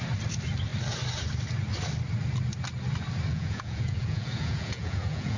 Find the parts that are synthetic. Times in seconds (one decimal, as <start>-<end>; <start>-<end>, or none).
3.3-5.4